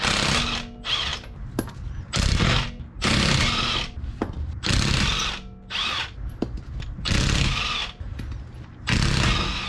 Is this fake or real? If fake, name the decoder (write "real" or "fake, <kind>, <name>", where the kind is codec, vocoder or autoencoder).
real